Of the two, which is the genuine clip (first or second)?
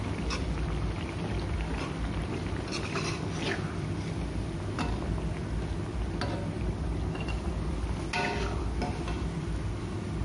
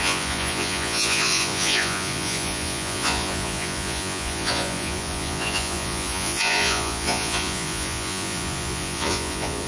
first